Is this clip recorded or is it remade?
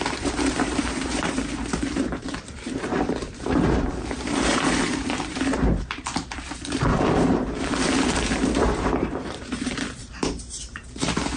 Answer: remade